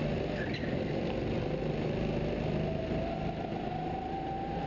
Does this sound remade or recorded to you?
recorded